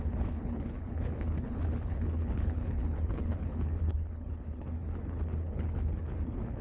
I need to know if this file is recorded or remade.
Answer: remade